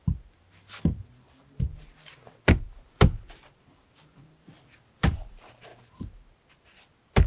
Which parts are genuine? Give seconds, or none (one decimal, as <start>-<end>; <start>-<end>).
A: 0.0-7.3